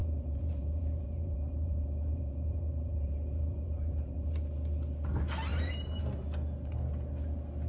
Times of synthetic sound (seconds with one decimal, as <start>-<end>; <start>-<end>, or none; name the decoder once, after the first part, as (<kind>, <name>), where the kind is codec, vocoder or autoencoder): 0.0-4.4 (vocoder, BigVGAN v2); 5.5-6.0